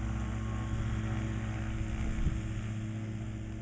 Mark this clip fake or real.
real